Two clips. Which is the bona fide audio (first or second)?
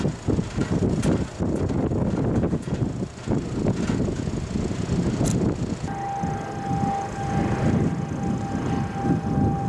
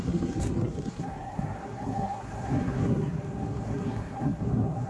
first